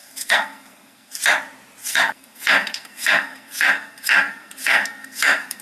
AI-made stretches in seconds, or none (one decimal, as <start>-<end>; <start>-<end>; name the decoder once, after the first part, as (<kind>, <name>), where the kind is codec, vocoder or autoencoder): 0.0-1.2 (codec, SNAC); 1.8-5.6